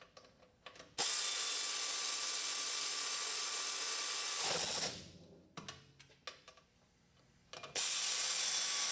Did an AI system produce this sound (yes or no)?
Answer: no